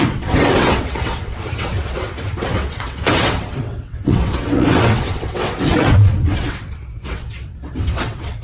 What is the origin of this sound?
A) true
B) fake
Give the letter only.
B